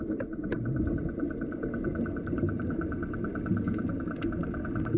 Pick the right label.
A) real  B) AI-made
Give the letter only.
A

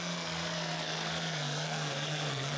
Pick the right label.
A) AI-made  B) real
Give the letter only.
A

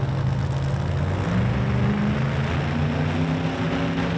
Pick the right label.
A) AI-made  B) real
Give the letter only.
B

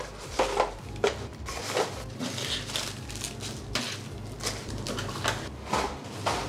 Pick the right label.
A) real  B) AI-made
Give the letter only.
A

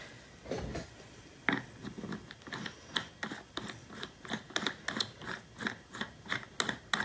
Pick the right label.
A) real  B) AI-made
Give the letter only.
A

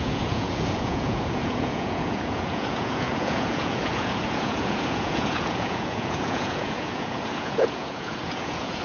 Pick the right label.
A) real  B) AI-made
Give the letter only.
B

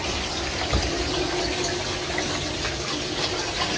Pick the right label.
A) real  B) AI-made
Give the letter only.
A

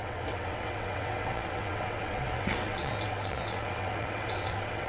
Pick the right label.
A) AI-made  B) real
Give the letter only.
A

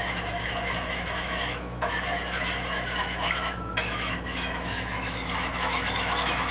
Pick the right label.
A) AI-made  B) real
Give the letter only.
A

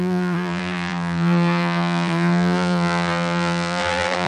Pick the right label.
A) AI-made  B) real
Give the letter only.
A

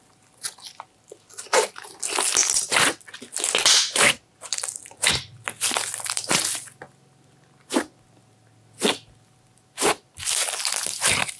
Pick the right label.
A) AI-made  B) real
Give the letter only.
B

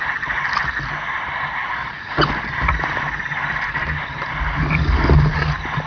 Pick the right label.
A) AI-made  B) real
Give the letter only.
B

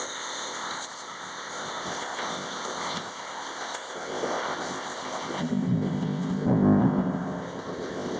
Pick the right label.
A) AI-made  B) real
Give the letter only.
A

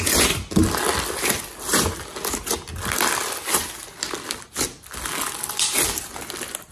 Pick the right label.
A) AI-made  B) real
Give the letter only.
B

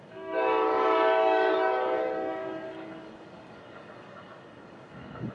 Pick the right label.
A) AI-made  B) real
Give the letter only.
A